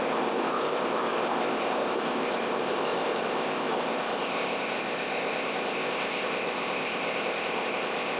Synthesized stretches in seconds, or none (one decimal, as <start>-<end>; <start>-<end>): 0.0-8.2